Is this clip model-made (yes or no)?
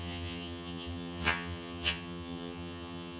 yes